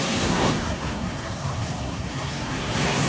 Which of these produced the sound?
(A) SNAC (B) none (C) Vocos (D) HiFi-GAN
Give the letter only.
A